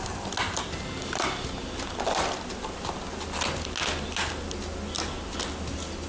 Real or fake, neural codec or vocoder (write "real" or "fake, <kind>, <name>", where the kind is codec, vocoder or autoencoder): real